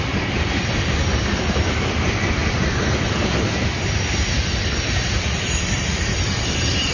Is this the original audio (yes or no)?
no